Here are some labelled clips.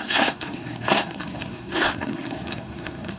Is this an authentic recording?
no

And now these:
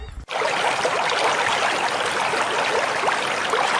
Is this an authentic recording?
yes